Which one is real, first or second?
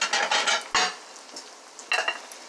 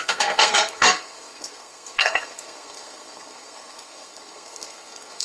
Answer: first